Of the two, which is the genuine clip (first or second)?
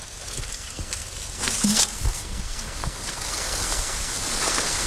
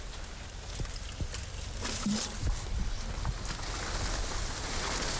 second